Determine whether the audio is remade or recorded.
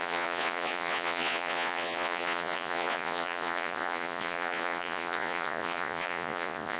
remade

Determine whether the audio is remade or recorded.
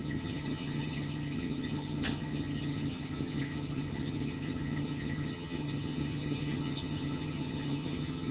remade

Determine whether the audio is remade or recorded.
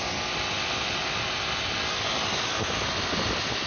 recorded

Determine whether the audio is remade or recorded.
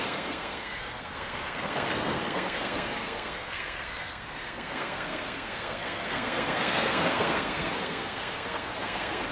remade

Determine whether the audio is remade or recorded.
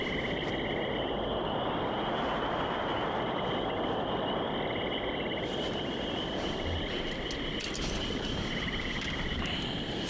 recorded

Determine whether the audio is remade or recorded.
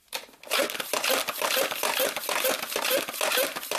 recorded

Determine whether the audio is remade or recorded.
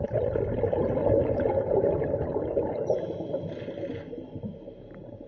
recorded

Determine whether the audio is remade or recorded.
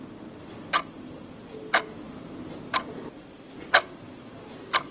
recorded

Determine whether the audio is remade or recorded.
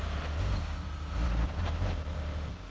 recorded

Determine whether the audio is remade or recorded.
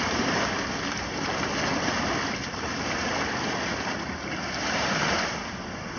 recorded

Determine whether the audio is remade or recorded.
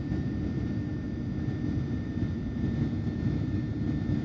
remade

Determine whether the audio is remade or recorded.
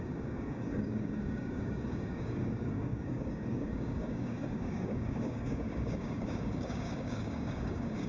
remade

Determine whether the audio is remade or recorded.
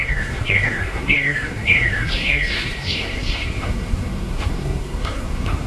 remade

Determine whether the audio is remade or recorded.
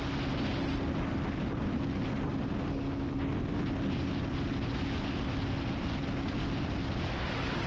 recorded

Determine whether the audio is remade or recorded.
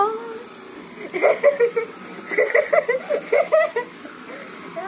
recorded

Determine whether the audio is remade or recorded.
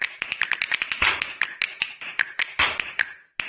recorded